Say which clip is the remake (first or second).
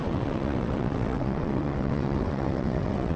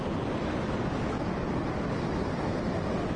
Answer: first